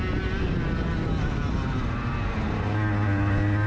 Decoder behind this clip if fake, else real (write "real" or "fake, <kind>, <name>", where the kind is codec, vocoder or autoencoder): real